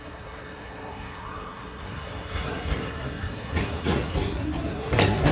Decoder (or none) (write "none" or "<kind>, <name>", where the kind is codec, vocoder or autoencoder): codec, SNAC